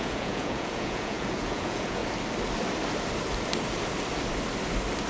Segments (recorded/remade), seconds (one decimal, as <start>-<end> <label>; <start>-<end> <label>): 0.0-2.0 remade; 2.0-5.1 recorded